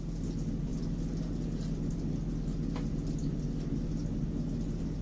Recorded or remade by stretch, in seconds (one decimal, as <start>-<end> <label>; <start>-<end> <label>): 0.0-5.0 recorded